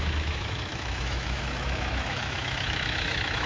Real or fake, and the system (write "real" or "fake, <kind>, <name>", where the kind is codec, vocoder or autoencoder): fake, autoencoder, DAC-VAE